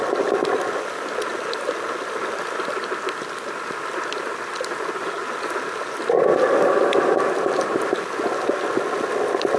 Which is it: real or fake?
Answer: real